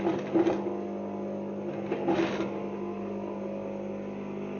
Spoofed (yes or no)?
no